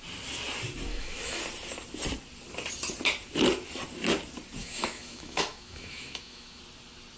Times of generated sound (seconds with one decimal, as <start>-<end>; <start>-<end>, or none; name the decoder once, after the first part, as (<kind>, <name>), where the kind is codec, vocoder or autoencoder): 0.9-1.4 (autoencoder, DAC-VAE); 4.6-6.6